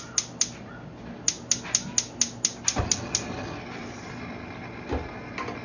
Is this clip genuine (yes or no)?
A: yes